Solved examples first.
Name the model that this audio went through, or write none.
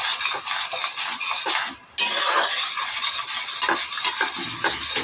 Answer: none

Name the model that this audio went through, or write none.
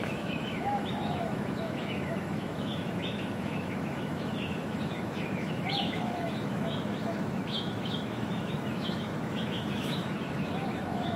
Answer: autoencoder, DAC-VAE